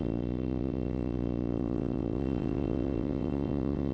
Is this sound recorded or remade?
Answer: remade